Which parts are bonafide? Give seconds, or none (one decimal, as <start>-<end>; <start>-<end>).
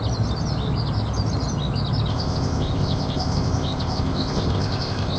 0.0-2.1